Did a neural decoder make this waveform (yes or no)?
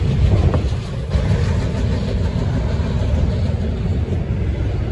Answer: no